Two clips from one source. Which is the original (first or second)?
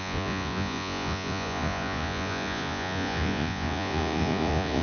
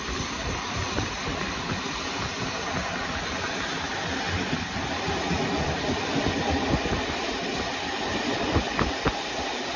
second